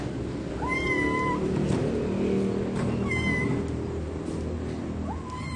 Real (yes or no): yes